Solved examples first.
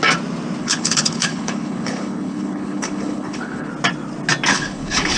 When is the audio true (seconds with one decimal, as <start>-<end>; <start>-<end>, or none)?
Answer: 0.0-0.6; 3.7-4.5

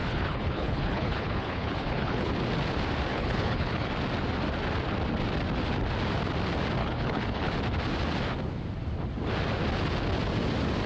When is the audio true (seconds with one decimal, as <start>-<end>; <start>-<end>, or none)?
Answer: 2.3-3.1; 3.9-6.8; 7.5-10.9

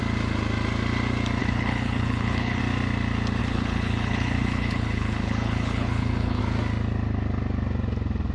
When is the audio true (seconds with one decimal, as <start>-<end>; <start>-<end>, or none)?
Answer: 0.0-1.4; 2.6-3.4; 6.4-8.3

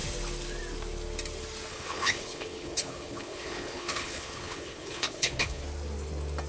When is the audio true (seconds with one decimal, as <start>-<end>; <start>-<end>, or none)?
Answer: 0.0-1.7; 5.6-6.5